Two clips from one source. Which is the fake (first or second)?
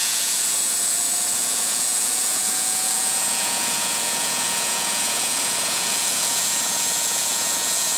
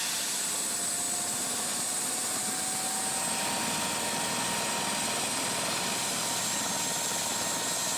first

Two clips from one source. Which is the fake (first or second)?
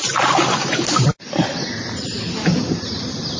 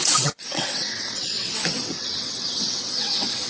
second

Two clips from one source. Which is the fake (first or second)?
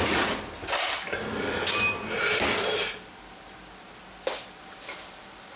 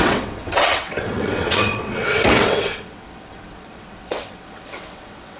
second